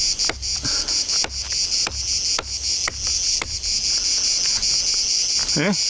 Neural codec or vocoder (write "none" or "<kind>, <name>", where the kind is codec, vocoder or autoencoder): none